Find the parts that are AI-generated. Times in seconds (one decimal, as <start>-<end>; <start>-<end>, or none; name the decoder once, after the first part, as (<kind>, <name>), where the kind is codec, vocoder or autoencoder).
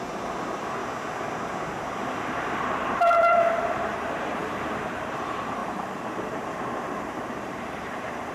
0.0-0.8 (vocoder, BigVGAN v2); 2.6-8.3